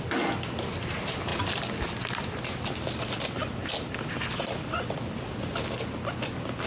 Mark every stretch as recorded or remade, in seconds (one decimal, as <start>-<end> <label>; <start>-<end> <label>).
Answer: 0.0-6.7 recorded